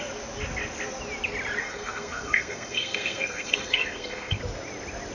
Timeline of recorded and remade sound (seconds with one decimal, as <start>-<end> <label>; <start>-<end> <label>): 0.0-1.6 recorded; 1.6-4.4 remade; 4.4-5.1 recorded